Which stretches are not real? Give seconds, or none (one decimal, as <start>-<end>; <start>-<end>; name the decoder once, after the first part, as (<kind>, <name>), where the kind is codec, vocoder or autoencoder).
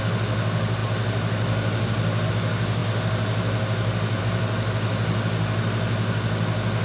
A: none